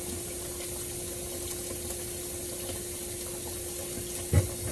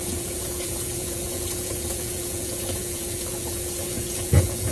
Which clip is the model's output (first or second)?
second